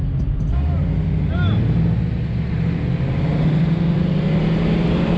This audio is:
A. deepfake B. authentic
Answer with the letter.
B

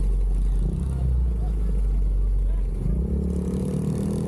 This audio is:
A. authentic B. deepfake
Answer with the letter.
A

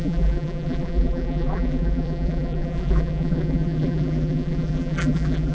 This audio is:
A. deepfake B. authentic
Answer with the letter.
A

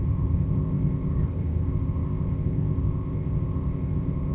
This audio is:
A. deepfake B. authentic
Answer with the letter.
A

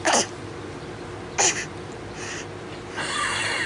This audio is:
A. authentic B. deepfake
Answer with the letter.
A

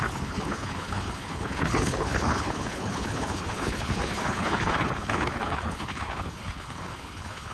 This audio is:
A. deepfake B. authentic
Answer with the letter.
A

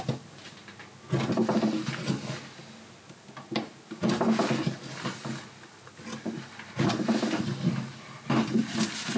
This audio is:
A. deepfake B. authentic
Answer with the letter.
B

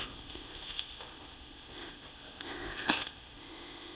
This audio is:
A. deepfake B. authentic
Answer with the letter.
A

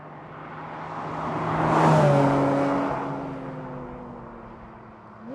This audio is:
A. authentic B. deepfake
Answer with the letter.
A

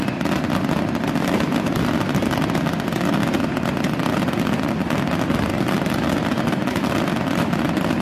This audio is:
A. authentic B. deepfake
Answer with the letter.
A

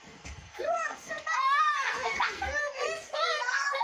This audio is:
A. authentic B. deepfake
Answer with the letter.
B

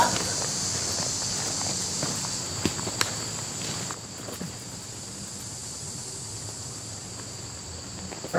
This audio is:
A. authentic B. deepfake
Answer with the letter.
A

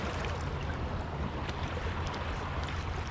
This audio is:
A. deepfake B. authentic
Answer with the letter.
A